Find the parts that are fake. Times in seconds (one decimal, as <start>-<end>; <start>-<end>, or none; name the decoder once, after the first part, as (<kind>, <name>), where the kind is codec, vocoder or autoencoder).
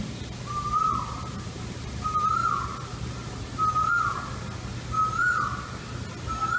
0.0-2.4 (vocoder, BigVGAN v2)